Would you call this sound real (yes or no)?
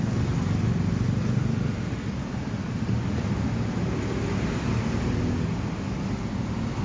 yes